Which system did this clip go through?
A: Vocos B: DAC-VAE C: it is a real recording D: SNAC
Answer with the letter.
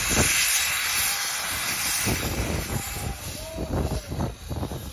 C